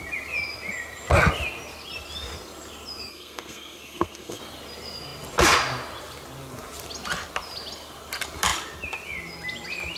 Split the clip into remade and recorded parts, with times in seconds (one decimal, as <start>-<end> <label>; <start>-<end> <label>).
0.0-3.1 recorded; 3.1-4.4 remade; 4.4-10.0 recorded